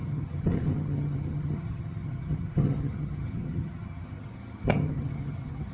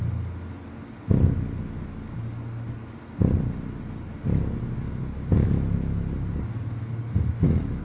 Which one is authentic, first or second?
second